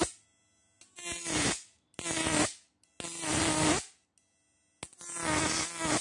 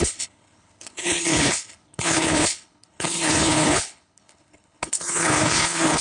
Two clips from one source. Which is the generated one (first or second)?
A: second